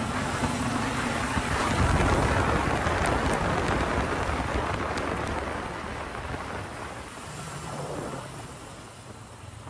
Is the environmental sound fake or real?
real